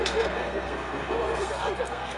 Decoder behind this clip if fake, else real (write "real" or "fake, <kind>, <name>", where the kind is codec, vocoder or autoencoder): fake, codec, SNAC